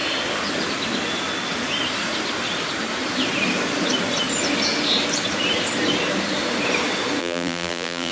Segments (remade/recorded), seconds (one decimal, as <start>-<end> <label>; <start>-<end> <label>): 0.0-7.2 recorded; 7.2-8.1 remade